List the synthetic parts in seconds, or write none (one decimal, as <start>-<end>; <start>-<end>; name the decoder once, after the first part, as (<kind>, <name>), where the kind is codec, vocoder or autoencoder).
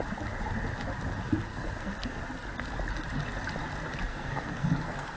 1.5-2.2 (codec, SNAC); 4.1-5.2